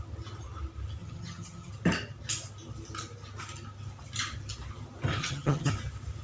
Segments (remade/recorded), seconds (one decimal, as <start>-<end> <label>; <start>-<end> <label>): 0.0-1.0 recorded; 1.0-1.7 remade; 1.7-5.2 recorded; 5.2-5.7 remade; 5.7-6.2 recorded